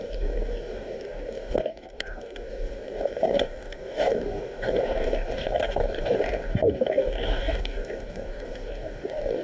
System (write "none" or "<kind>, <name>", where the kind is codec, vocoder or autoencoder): codec, DAC